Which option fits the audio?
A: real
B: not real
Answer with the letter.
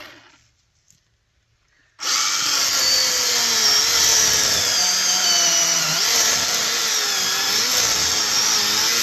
A